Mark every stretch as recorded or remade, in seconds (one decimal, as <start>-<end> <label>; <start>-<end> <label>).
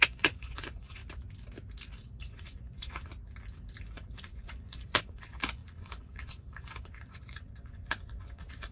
0.0-1.0 remade; 1.0-2.0 recorded; 2.0-3.1 remade; 3.1-3.8 recorded; 3.8-8.7 remade